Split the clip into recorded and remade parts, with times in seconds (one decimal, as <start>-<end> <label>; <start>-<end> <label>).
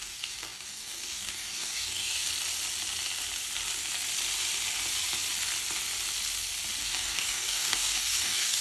0.0-2.3 remade; 2.3-6.8 recorded; 6.8-8.6 remade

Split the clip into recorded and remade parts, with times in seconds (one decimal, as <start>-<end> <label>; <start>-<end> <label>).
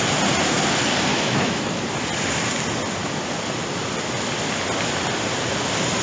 0.0-1.1 recorded; 1.1-1.8 remade; 1.8-6.0 recorded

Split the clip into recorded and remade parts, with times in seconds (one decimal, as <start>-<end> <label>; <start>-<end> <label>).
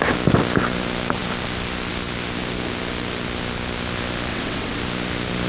0.0-4.3 recorded; 4.3-4.8 remade; 4.8-5.5 recorded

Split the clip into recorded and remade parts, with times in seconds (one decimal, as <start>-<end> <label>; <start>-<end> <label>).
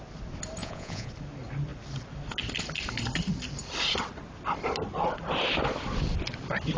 0.0-0.6 recorded; 0.6-1.1 remade; 1.1-6.8 recorded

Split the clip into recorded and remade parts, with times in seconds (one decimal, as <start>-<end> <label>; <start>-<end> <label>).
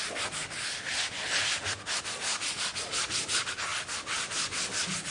0.0-5.1 recorded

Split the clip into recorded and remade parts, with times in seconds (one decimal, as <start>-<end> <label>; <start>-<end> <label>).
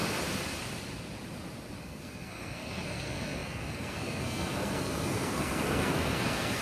0.0-1.8 recorded; 1.8-6.6 remade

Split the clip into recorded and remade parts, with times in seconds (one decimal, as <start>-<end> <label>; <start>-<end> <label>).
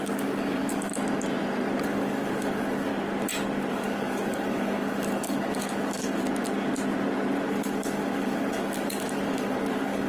0.0-0.9 remade; 0.9-1.8 recorded; 1.8-2.9 remade; 2.9-3.7 recorded; 3.7-6.2 remade; 6.2-7.5 recorded; 7.5-10.1 remade